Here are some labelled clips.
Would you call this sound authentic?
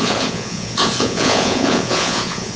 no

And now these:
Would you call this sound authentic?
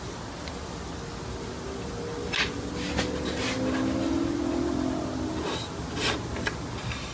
yes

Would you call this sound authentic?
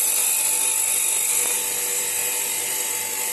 no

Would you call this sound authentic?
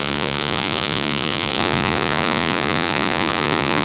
no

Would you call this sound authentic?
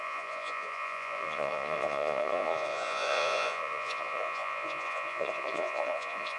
no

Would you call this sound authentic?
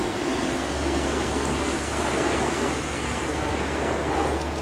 no